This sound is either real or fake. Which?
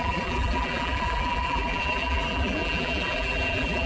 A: fake